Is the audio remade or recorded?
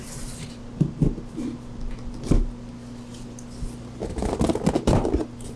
recorded